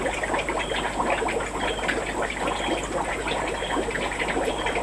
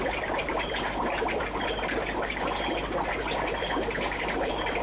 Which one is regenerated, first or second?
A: second